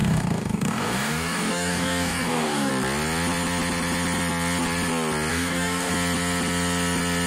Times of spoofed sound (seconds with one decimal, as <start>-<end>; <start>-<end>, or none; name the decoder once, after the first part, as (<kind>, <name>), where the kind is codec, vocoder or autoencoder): 0.0-2.7 (codec, DAC); 5.3-5.9